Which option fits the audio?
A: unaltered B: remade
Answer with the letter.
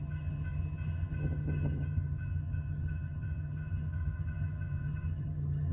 B